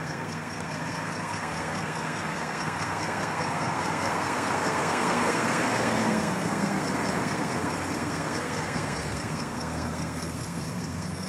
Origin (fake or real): fake